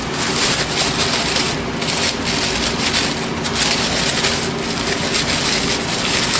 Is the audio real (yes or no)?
yes